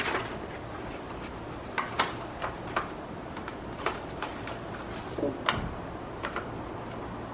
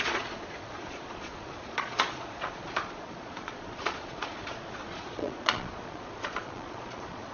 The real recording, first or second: first